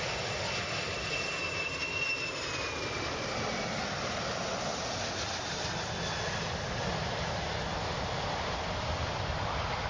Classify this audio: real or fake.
real